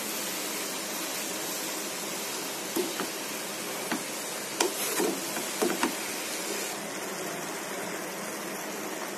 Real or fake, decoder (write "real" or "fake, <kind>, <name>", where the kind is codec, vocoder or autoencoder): real